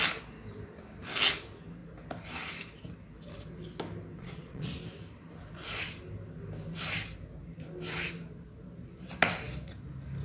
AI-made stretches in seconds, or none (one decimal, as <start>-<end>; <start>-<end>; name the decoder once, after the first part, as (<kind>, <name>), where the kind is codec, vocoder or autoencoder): 4.2-4.7 (vocoder, Vocos)